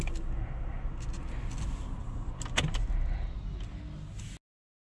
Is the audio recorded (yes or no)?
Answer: yes